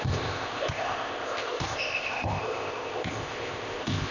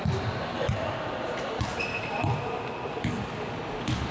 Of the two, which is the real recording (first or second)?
second